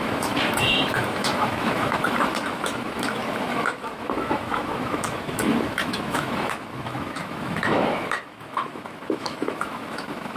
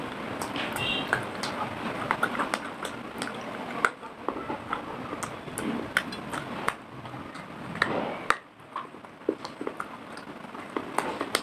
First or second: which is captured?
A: second